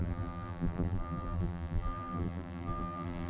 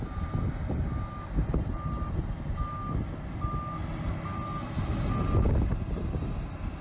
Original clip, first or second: second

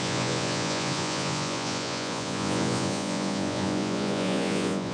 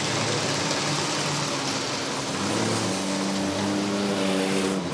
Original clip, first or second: second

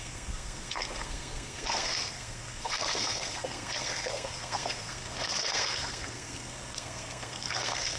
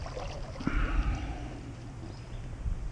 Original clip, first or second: second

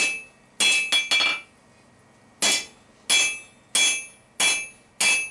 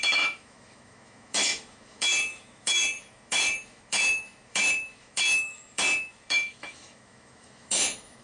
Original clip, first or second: first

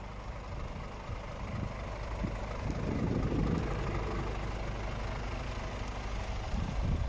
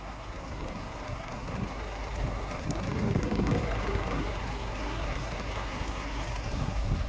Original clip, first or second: first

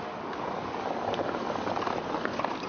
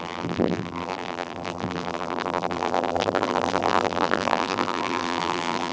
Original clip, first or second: first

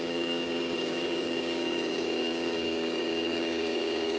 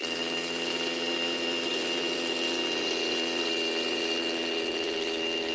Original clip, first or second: second